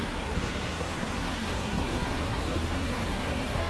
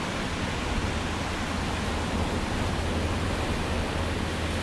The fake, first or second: first